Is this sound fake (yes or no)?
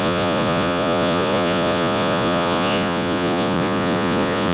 yes